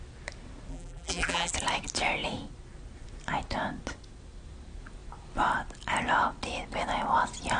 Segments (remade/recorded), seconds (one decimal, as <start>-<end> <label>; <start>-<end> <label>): 0.0-0.7 recorded; 0.7-1.5 remade; 1.5-7.6 recorded